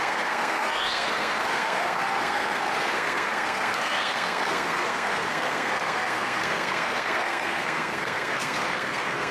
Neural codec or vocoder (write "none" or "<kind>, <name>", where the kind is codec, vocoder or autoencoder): codec, SNAC